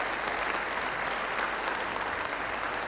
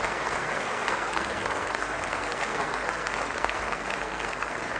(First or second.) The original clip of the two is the first